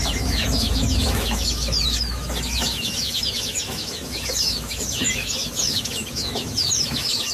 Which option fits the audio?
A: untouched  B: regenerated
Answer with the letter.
B